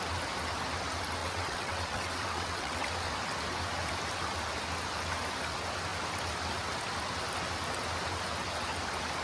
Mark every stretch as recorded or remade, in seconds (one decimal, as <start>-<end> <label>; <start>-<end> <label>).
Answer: 0.0-1.2 recorded; 1.2-2.9 remade; 2.9-9.2 recorded